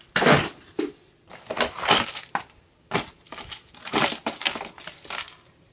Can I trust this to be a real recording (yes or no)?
yes